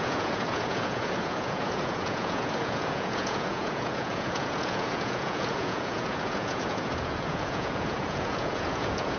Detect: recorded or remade remade